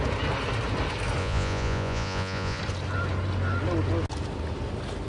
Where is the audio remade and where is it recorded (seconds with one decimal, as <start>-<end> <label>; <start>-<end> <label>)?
0.0-1.2 recorded; 1.2-2.6 remade; 2.6-5.1 recorded